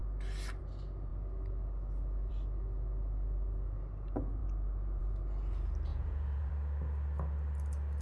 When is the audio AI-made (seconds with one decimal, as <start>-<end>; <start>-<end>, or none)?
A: 5.9-6.5